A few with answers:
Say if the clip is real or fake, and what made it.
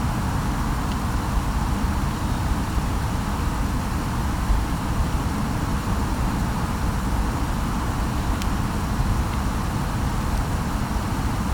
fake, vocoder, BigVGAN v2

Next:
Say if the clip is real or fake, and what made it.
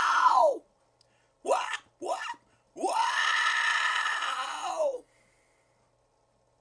real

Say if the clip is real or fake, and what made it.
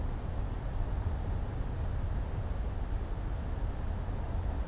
real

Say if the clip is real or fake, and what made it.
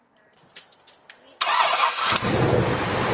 real